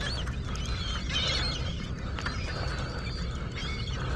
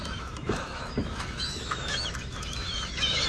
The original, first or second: first